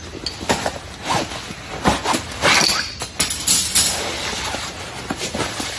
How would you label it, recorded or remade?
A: recorded